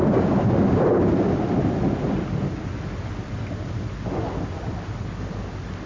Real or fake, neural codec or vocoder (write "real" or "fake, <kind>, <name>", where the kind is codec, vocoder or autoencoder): real